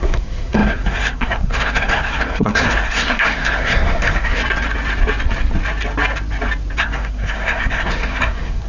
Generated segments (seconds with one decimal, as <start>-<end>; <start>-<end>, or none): 0.0-4.4; 6.8-8.7